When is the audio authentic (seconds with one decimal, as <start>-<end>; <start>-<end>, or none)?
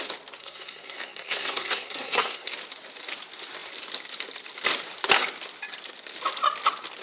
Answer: 0.0-0.4; 2.5-7.0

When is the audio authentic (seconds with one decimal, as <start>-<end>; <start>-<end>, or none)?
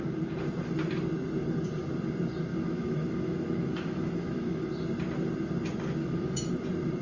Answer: 0.0-2.5; 4.7-6.0; 6.5-7.0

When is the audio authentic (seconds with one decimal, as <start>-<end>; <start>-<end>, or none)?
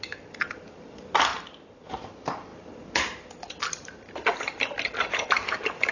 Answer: 0.0-5.9